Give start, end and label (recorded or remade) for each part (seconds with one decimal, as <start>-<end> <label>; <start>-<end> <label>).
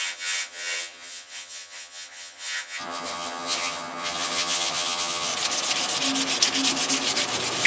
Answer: 0.0-5.3 remade; 5.3-7.7 recorded